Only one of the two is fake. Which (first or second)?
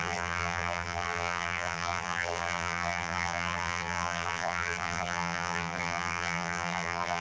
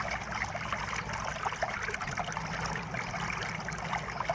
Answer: first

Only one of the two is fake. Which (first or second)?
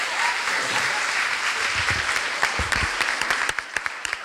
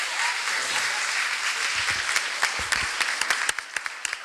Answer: first